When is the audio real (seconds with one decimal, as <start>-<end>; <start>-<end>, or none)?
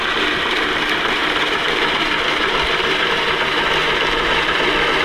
0.0-1.2; 3.1-3.8; 4.6-5.0